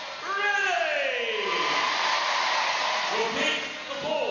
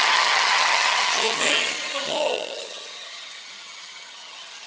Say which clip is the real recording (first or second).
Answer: first